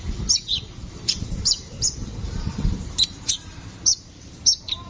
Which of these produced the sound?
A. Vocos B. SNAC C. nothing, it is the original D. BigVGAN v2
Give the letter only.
D